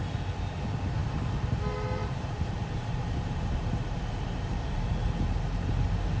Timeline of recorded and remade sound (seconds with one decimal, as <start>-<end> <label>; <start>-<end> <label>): 0.0-2.0 recorded; 2.0-5.7 remade; 5.7-6.2 recorded

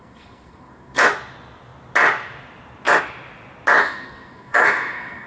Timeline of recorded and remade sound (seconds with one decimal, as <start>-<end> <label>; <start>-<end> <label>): 0.0-1.0 remade; 1.0-3.8 recorded; 3.8-5.3 remade

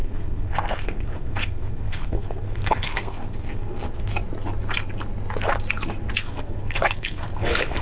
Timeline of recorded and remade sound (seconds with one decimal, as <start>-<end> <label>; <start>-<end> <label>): 0.0-4.1 remade; 4.1-6.2 recorded; 6.2-7.8 remade

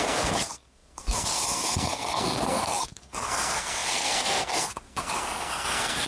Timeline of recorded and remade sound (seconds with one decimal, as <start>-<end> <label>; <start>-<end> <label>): 0.0-6.1 remade

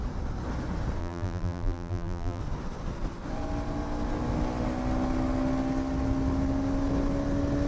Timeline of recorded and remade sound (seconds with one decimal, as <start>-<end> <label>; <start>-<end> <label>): 0.0-1.0 recorded; 1.0-2.4 remade; 2.4-7.7 recorded

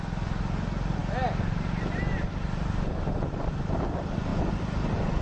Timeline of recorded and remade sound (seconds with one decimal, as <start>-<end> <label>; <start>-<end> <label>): 0.0-5.2 recorded